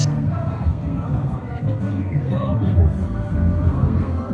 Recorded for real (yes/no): no